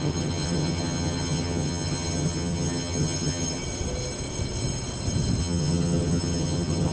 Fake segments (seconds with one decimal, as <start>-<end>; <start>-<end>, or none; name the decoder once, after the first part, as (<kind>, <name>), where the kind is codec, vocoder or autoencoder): 0.0-3.6 (vocoder, HiFi-GAN); 5.4-6.9